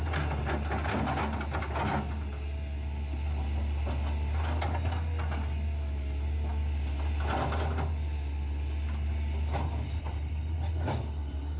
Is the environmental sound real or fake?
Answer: real